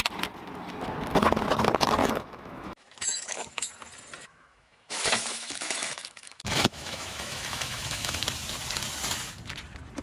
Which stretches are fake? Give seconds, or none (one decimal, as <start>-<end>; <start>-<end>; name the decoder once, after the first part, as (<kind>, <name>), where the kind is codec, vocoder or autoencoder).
2.0-3.7 (autoencoder, DAC-VAE); 4.2-8.2